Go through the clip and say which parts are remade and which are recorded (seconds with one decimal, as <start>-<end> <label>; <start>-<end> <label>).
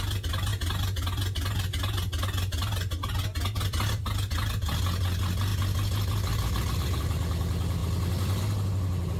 0.0-7.8 recorded; 7.8-8.4 remade; 8.4-9.2 recorded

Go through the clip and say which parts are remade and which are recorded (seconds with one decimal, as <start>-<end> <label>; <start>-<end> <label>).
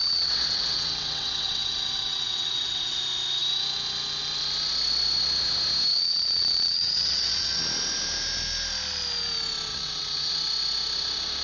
0.0-3.0 remade; 3.0-5.9 recorded; 5.9-7.6 remade; 7.6-9.7 recorded; 9.7-10.3 remade; 10.3-11.4 recorded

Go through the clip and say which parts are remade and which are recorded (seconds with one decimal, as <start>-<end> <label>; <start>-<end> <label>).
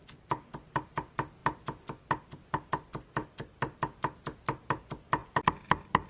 0.0-6.1 recorded